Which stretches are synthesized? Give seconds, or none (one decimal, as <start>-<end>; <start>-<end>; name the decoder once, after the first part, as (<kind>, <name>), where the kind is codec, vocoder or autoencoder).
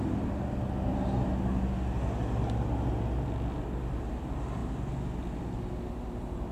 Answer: none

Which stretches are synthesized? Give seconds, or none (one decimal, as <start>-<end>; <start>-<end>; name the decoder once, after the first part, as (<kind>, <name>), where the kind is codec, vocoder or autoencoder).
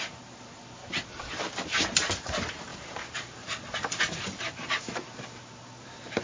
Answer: 0.0-0.8 (vocoder, BigVGAN v2); 2.2-6.2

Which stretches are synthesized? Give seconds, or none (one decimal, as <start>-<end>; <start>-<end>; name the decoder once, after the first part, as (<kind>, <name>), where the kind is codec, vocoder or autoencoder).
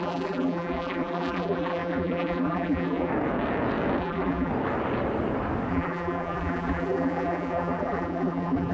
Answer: 0.0-3.1 (vocoder, BigVGAN v2); 4.0-4.5; 5.7-8.7